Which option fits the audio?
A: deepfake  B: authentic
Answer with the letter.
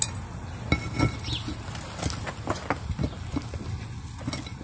B